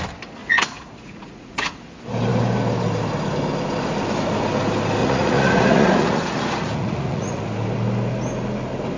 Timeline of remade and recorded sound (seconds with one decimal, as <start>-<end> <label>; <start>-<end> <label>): 0.0-0.4 recorded; 0.4-1.8 remade; 1.8-5.0 recorded; 5.0-7.4 remade; 7.4-9.0 recorded